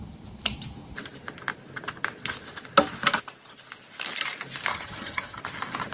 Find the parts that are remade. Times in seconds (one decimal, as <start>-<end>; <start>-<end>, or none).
4.7-5.4